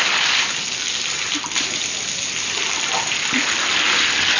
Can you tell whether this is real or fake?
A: real